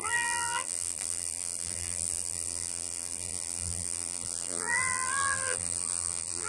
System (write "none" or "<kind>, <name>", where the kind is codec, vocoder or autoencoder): vocoder, BigVGAN v2